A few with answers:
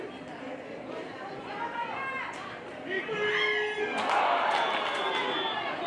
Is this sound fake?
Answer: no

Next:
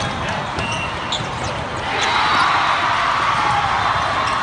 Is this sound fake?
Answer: no